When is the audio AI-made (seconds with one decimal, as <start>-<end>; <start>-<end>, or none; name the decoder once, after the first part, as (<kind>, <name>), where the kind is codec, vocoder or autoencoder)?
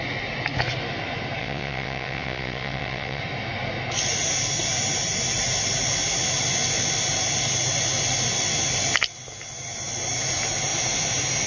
1.4-3.2 (vocoder, WaveNeXt)